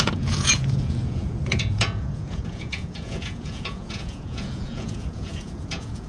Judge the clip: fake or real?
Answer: fake